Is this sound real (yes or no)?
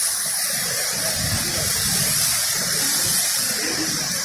yes